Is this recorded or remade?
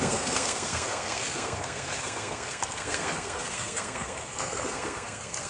remade